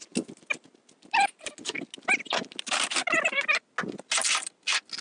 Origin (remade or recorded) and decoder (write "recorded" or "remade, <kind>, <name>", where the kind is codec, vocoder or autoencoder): recorded